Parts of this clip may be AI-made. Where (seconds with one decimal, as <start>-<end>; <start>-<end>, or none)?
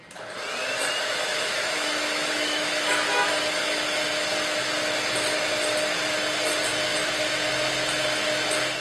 1.3-4.1